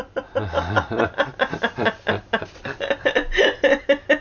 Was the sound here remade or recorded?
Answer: recorded